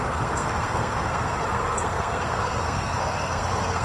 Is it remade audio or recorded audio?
remade